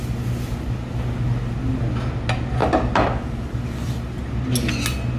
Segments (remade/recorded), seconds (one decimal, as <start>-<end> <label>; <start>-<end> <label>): 0.0-2.6 recorded; 2.6-4.0 remade; 4.0-5.2 recorded